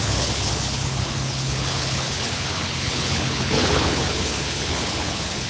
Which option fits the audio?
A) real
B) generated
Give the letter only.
B